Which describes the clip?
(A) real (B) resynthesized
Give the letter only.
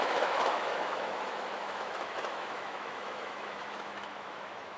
B